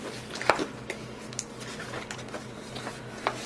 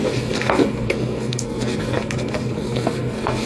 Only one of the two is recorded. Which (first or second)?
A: first